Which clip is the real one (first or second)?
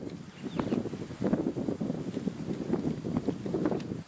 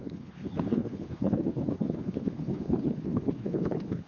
first